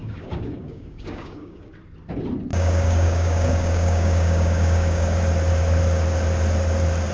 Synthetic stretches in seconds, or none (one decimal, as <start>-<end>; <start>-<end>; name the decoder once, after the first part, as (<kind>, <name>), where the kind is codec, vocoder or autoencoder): 0.0-1.7 (codec, DAC); 2.5-5.2